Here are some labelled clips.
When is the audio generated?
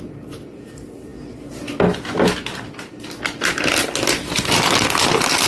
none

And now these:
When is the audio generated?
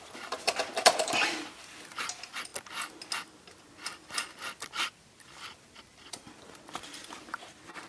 0.0-2.5; 3.4-7.9